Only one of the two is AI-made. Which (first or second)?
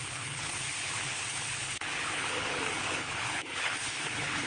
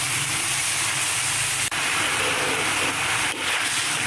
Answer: first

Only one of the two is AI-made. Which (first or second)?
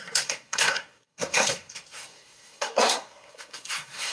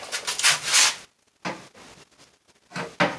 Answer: first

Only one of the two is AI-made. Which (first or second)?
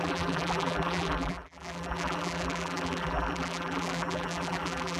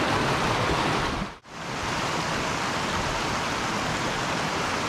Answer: first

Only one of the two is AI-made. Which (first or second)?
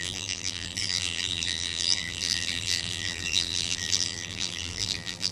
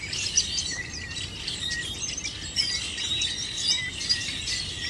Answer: first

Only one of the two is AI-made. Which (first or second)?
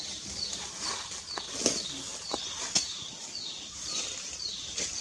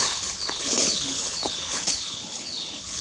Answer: second